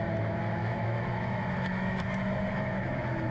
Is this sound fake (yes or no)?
yes